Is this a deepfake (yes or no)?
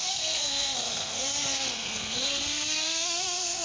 yes